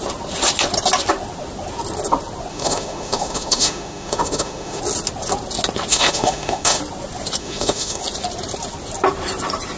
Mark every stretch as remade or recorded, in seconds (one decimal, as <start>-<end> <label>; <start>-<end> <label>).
0.0-2.5 recorded; 2.5-4.8 remade; 4.8-5.9 recorded; 5.9-6.8 remade; 6.8-7.4 recorded; 7.4-8.0 remade; 8.0-9.8 recorded